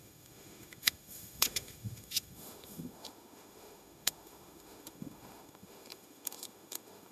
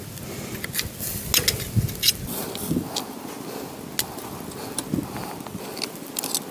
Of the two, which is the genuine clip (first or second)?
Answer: second